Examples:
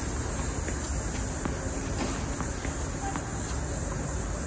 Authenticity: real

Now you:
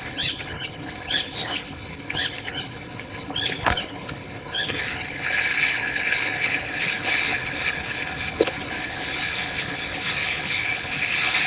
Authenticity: fake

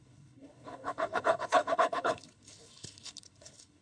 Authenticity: fake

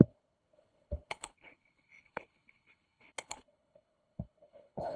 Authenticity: fake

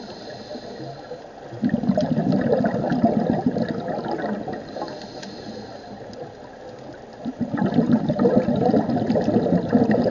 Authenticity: real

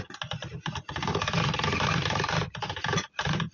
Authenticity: real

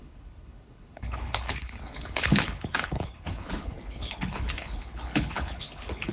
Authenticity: fake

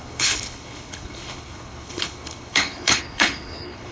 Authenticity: fake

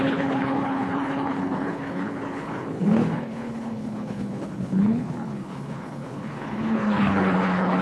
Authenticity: fake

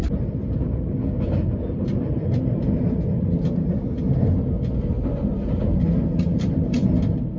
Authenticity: real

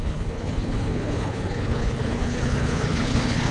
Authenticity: fake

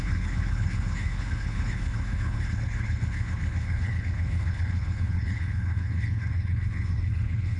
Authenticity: fake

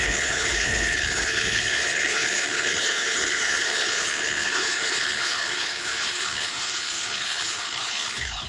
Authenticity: fake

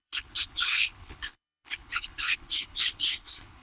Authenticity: fake